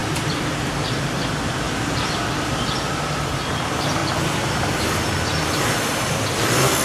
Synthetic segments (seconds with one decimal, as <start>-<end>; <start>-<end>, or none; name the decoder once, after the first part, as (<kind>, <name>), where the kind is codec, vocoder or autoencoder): 0.0-3.5 (vocoder, BigVGAN v2)

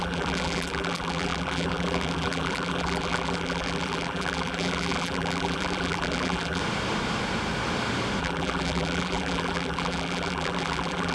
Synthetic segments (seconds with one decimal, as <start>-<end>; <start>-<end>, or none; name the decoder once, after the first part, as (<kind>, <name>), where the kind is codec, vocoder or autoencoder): 0.0-6.6 (vocoder, BigVGAN v2); 8.2-11.1

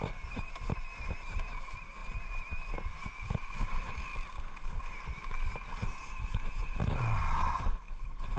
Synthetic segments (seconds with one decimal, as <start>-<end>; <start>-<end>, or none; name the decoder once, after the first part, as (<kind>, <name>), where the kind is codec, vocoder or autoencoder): none

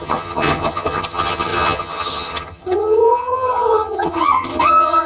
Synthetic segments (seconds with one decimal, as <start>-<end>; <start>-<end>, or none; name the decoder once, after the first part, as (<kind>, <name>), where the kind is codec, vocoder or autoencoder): 0.0-5.1 (vocoder, HiFi-GAN)

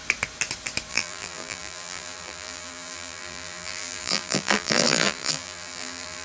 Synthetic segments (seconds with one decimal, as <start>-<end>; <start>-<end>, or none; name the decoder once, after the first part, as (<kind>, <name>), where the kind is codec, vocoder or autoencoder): 0.9-6.2 (vocoder, BigVGAN v2)

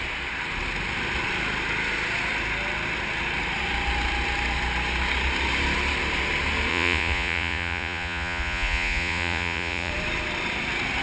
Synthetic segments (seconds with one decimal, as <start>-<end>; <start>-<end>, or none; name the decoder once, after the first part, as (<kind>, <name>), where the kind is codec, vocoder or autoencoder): 6.7-9.9 (vocoder, Vocos)